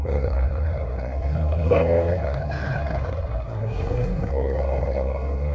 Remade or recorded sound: remade